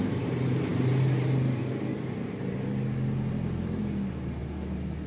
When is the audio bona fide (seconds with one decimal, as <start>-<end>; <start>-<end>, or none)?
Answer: 0.0-5.1